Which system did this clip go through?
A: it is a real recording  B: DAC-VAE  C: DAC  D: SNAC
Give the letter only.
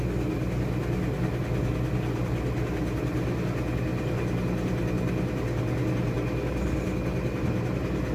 A